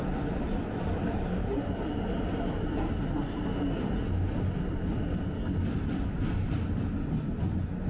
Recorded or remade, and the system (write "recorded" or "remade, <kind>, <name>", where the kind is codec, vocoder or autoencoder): recorded